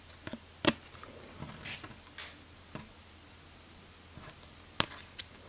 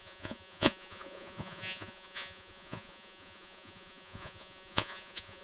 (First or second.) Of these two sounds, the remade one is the second